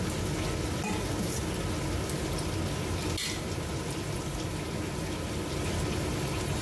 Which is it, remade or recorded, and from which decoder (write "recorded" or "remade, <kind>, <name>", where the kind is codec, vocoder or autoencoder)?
recorded